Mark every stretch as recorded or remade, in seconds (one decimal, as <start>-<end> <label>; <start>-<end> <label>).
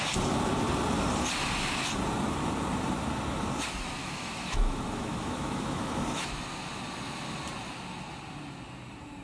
0.0-4.0 recorded; 4.0-6.4 remade; 6.4-9.2 recorded